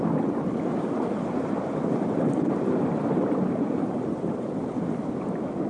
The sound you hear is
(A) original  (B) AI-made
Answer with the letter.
A